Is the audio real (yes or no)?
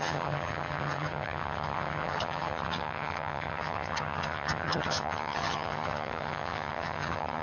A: no